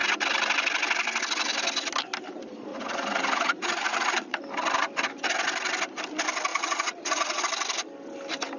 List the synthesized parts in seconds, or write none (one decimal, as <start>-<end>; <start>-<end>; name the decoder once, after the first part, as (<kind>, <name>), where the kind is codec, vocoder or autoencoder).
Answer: 2.7-4.4 (vocoder, Vocos); 6.5-7.4